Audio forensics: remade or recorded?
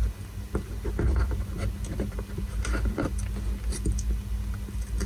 recorded